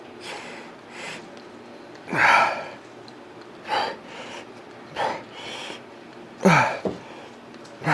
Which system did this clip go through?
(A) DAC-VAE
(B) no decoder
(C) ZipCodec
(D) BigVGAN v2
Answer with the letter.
B